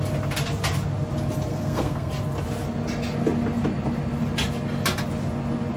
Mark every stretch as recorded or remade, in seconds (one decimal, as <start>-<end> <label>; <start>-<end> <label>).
0.0-1.5 recorded; 1.5-2.1 remade; 2.1-5.8 recorded

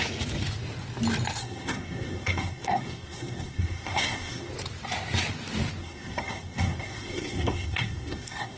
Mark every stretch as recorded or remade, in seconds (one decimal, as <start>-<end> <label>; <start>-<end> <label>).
0.0-1.4 recorded; 1.4-4.5 remade; 4.5-5.8 recorded; 5.8-8.6 remade